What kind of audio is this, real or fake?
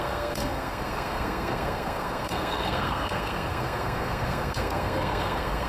fake